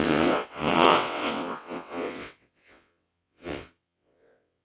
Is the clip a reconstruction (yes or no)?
yes